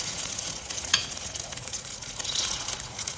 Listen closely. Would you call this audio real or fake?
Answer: fake